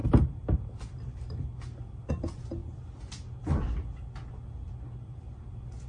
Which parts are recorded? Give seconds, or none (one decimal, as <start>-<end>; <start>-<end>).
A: 0.0-5.9